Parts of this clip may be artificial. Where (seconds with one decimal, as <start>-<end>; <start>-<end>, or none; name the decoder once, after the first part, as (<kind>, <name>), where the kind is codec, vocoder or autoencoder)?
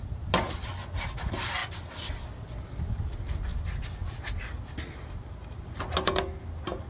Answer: none